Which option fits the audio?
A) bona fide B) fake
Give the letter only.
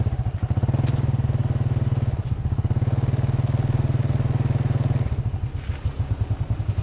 A